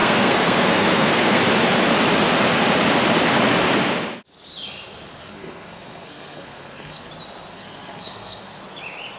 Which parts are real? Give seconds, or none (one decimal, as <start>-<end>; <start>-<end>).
1.4-5.2; 7.1-7.5; 8.6-9.2